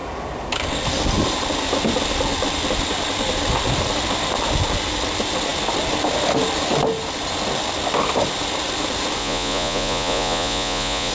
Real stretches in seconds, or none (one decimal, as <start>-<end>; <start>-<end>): 0.0-9.2